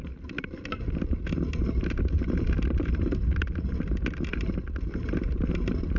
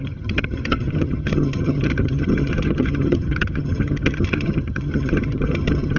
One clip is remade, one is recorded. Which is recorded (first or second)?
first